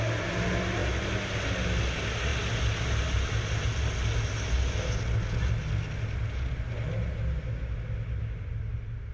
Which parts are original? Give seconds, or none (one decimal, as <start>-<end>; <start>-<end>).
0.0-9.1